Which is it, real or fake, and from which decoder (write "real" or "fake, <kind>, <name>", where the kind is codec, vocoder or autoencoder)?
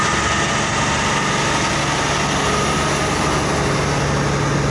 real